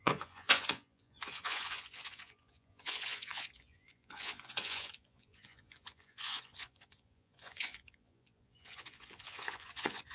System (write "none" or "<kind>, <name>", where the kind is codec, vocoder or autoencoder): vocoder, Vocos